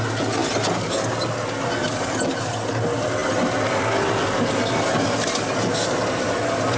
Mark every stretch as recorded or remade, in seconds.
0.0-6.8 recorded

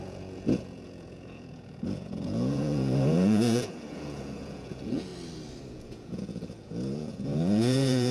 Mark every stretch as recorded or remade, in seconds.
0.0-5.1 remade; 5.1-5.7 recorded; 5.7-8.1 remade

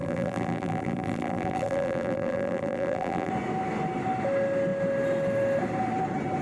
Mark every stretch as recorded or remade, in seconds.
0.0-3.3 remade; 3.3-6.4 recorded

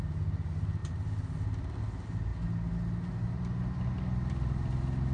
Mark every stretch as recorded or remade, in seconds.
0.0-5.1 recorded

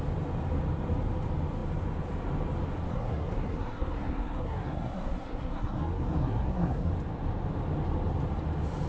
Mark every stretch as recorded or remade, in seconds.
0.0-2.9 recorded; 2.9-6.9 remade; 6.9-8.9 recorded

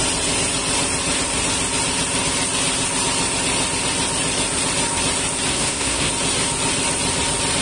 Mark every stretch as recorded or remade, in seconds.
0.0-5.5 recorded; 5.5-6.1 remade; 6.1-7.6 recorded